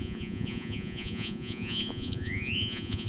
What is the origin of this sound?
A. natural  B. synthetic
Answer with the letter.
B